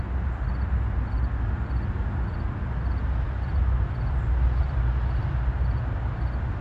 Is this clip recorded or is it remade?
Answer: recorded